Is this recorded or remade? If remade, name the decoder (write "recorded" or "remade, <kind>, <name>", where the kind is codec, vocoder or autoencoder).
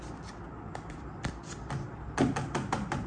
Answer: recorded